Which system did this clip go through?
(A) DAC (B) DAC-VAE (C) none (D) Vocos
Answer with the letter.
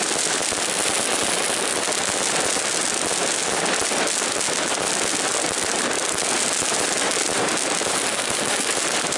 C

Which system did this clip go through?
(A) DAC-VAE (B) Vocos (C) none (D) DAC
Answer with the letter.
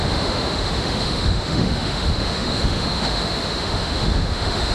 A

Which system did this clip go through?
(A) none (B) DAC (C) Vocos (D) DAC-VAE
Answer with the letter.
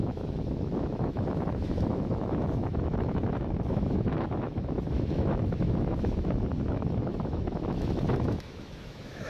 D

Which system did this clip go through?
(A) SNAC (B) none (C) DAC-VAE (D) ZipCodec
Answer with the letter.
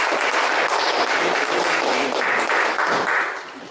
B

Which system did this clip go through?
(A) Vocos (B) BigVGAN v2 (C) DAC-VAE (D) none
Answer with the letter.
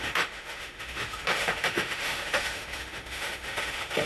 C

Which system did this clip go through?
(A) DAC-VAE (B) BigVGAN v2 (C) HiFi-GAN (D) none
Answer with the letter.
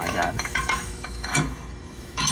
A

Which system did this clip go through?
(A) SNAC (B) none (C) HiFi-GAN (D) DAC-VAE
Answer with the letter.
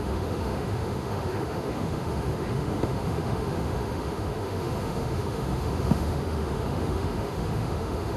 D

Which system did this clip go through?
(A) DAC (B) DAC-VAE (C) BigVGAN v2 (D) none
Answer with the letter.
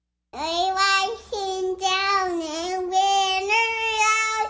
D